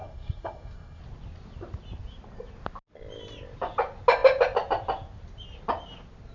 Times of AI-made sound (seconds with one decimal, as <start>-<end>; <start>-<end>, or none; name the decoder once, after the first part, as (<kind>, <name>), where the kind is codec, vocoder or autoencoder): 0.0-1.0 (codec, SNAC)

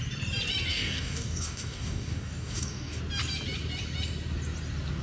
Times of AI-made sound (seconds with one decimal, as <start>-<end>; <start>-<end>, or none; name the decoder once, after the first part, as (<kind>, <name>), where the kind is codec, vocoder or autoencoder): 0.7-3.0 (codec, DAC)

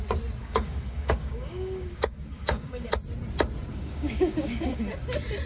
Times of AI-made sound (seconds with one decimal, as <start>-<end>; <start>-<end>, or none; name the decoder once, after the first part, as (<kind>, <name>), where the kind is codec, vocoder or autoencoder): 0.4-2.9 (codec, DAC); 3.7-5.0

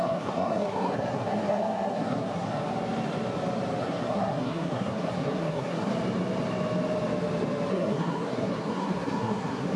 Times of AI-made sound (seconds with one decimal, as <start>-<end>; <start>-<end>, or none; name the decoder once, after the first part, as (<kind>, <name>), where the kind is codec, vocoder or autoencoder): 0.0-2.7 (codec, SNAC); 3.8-5.9; 7.7-9.8

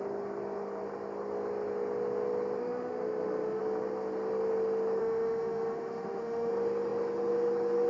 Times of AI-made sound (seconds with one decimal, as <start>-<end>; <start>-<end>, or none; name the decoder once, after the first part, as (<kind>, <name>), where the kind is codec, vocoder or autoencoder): 2.6-3.6 (autoencoder, DAC-VAE); 5.0-6.5

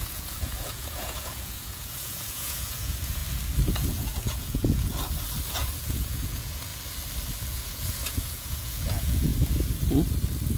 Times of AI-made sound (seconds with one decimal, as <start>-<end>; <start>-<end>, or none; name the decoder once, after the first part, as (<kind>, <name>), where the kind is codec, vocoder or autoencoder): 0.0-3.2 (vocoder, Vocos); 3.7-4.9; 5.5-6.7; 7.5-9.3

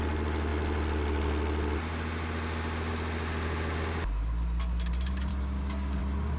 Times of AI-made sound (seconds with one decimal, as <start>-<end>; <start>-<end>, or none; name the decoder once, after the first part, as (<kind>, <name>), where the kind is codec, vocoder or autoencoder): 5.3-6.0 (codec, DAC)

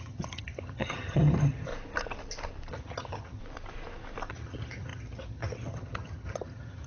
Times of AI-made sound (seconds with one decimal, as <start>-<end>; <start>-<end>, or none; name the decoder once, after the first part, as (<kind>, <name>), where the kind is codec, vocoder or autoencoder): 0.0-1.7 (vocoder, HiFi-GAN); 2.7-3.4; 4.3-6.9